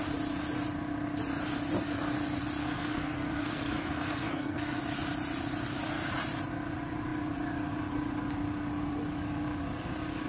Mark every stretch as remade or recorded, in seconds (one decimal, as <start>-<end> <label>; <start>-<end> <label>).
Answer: 0.0-2.6 recorded; 2.6-4.8 remade; 4.8-10.3 recorded